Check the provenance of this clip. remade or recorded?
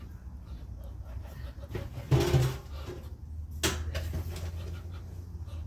recorded